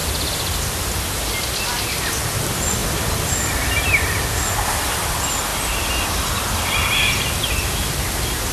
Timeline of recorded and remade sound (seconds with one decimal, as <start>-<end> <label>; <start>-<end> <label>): 0.0-8.5 recorded